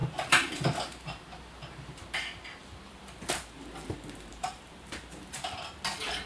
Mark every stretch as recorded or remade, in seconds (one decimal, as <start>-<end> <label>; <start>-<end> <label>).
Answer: 0.0-2.0 remade; 2.0-4.3 recorded; 4.3-5.6 remade; 5.6-6.3 recorded